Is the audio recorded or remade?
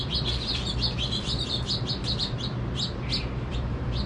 remade